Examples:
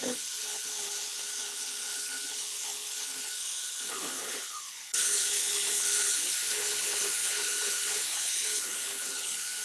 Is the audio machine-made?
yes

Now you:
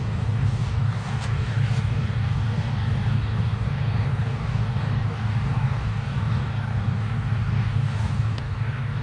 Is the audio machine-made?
yes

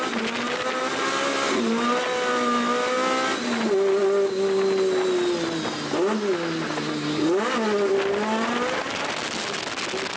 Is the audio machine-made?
no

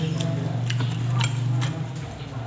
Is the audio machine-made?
no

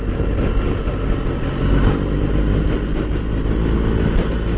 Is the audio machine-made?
no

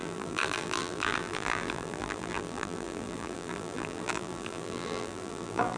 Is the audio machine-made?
yes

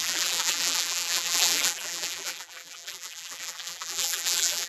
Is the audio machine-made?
yes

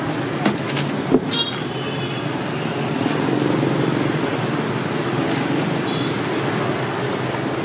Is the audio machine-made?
no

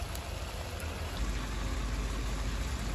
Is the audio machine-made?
no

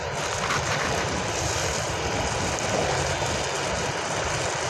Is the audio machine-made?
no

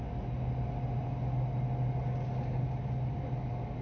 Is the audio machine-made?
no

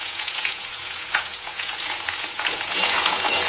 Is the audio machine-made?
yes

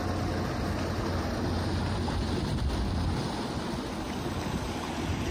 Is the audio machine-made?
no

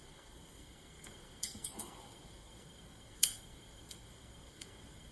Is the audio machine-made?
yes